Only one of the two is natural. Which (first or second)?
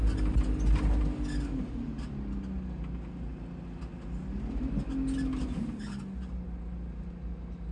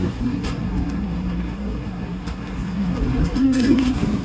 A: first